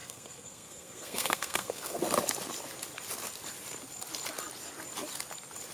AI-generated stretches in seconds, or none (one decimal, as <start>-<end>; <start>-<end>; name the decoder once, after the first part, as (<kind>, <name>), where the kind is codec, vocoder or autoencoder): 0.0-2.0 (codec, SNAC)